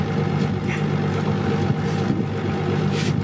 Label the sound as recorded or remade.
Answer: recorded